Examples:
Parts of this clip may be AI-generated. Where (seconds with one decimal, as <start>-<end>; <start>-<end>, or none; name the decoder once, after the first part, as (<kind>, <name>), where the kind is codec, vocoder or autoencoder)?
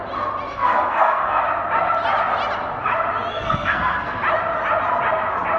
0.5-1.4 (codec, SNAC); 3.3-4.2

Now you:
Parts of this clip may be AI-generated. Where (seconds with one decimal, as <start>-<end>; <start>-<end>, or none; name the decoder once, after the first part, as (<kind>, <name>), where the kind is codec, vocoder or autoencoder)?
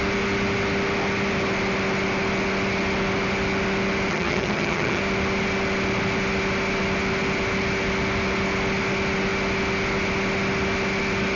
4.1-5.0 (vocoder, HiFi-GAN)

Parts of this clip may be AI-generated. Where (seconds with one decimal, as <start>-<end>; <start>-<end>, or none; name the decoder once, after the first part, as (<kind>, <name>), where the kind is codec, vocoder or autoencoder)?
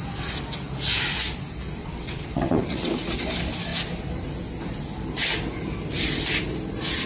1.8-2.9 (vocoder, WaveNeXt)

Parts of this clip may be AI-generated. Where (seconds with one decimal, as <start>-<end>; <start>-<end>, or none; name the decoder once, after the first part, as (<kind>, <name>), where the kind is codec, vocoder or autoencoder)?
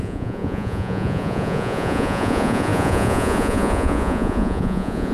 0.0-5.1 (vocoder, Vocos)